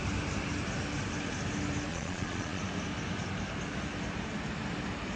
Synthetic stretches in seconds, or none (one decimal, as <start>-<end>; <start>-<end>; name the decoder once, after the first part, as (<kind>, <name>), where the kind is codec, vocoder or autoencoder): 1.9-2.6 (vocoder, Vocos)